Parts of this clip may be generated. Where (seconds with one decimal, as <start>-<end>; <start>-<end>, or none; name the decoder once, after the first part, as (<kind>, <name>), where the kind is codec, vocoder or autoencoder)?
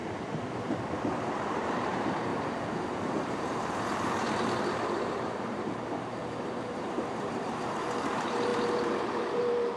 1.2-9.8 (vocoder, BigVGAN v2)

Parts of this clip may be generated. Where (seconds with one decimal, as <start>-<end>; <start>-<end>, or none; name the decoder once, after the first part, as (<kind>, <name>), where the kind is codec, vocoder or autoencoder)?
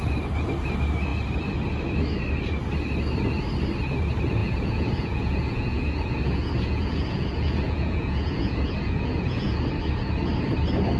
4.4-9.7 (vocoder, Vocos)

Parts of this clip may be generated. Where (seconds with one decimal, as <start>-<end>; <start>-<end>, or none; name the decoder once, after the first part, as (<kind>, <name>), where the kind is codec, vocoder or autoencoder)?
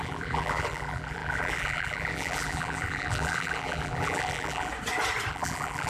0.0-4.7 (vocoder, BigVGAN v2); 5.3-5.9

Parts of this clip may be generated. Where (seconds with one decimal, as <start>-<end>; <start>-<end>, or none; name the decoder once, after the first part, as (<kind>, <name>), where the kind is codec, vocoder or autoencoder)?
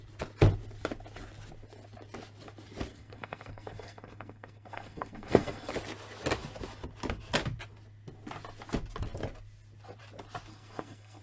2.9-5.7 (codec, SNAC); 10.5-11.2